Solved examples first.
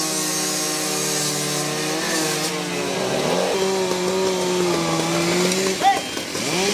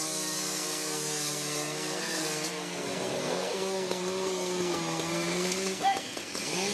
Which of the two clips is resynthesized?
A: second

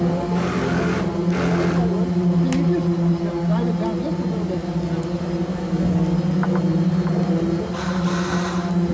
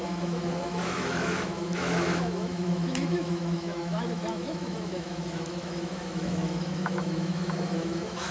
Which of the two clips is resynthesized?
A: second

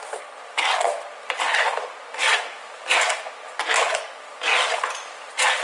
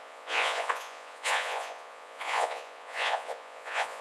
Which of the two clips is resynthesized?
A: second